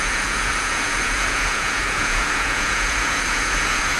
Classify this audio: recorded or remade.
remade